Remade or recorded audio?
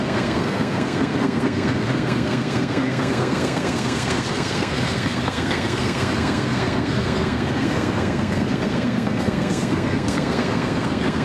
remade